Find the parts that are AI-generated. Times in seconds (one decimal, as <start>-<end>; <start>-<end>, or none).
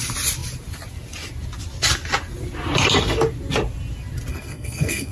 4.3-5.1